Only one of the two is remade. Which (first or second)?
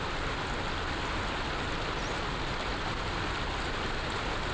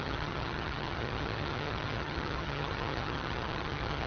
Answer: second